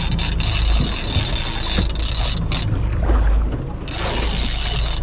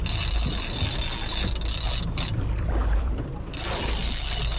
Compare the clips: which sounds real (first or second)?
first